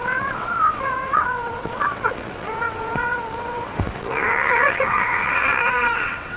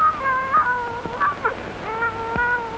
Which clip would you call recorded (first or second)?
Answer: second